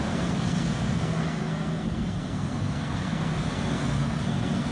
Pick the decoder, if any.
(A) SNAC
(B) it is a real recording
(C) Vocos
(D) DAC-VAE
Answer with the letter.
A